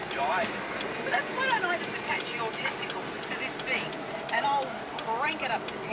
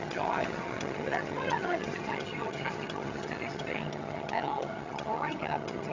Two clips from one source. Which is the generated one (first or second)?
second